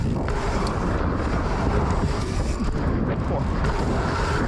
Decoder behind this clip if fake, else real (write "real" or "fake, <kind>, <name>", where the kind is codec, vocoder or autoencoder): real